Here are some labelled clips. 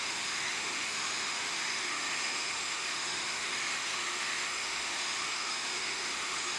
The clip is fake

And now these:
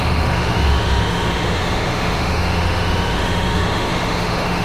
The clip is fake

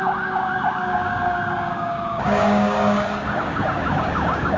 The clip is fake